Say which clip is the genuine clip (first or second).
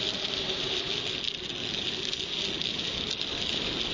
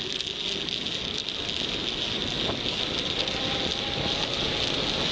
second